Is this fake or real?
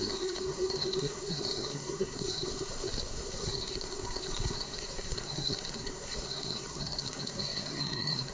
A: fake